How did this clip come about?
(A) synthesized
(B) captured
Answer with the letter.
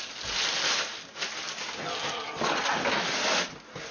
B